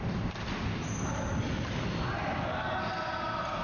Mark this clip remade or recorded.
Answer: recorded